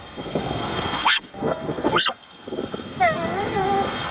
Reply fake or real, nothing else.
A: fake